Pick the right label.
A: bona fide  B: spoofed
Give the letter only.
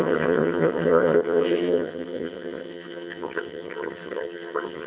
B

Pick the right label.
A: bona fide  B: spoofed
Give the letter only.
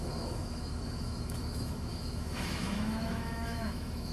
B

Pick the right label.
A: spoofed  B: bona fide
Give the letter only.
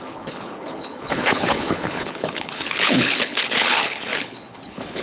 A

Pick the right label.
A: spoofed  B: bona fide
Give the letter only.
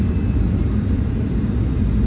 B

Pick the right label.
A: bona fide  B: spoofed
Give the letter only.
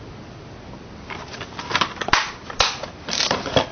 A